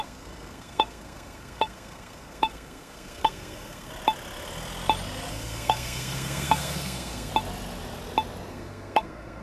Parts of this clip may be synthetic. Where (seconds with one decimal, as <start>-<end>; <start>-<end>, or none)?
0.0-3.9; 5.3-7.3; 8.5-9.4